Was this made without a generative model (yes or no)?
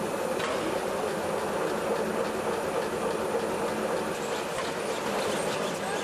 yes